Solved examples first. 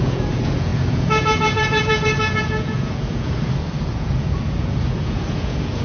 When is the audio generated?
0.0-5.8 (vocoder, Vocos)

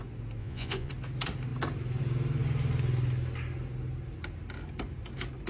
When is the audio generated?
0.4-0.9 (vocoder, Vocos)

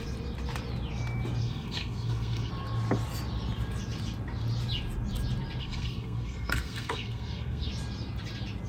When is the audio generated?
1.4-2.5 (codec, SNAC); 5.6-7.7

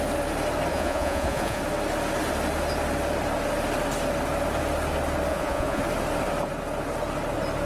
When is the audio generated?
0.7-1.6 (vocoder, Vocos); 5.3-5.8

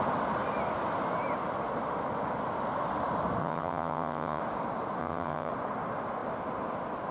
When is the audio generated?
3.4-4.4 (vocoder, HiFi-GAN); 5.0-5.5